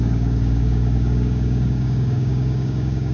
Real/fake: fake